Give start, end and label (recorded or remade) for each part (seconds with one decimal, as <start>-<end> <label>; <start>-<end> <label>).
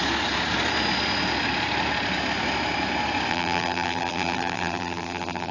0.0-3.3 recorded; 3.3-5.5 remade